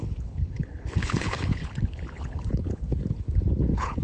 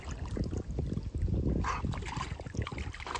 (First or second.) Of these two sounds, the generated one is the first